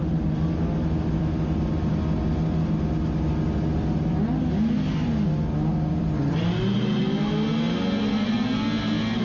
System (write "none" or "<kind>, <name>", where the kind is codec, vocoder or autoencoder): none